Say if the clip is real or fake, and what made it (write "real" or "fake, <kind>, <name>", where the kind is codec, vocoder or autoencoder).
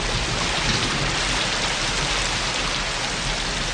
real